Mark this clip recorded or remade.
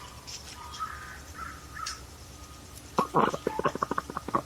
recorded